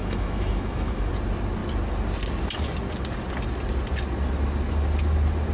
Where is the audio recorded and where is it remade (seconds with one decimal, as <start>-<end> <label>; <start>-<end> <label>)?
0.0-1.1 remade; 1.1-5.5 recorded